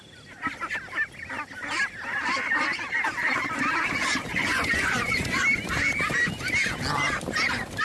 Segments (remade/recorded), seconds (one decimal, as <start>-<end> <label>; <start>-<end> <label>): 0.0-4.3 recorded; 4.3-5.4 remade; 5.4-7.8 recorded